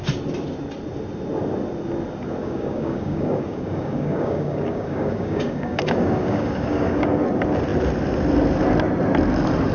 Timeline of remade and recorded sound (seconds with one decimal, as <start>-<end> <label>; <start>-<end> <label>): 0.0-2.4 recorded; 2.4-7.2 remade; 7.2-9.7 recorded